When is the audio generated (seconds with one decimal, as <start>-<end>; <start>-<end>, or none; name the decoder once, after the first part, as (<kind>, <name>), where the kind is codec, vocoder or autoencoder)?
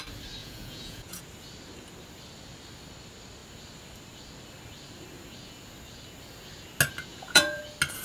0.4-1.2 (vocoder, Vocos); 7.1-7.6